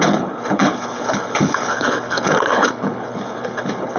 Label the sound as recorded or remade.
remade